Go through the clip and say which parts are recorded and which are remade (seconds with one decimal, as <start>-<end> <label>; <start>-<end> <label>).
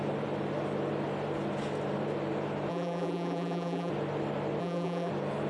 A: 0.0-2.7 recorded; 2.7-3.9 remade; 3.9-4.6 recorded; 4.6-5.1 remade; 5.1-5.5 recorded